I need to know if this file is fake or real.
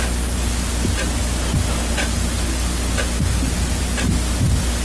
real